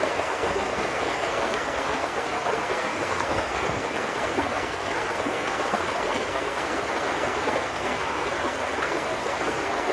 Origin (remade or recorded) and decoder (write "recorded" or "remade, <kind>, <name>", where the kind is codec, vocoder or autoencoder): remade, codec, SNAC